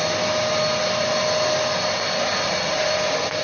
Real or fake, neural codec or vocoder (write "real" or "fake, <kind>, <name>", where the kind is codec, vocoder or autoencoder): real